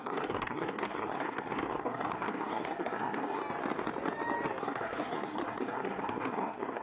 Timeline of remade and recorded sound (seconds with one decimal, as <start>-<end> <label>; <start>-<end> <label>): 0.0-3.4 remade; 3.4-4.6 recorded; 4.6-6.8 remade